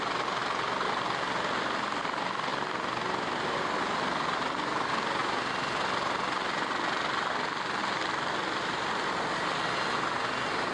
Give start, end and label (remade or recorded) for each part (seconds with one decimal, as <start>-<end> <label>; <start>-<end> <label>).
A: 0.0-10.7 recorded